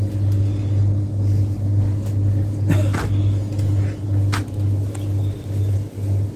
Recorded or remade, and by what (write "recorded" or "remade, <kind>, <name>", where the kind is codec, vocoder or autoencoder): recorded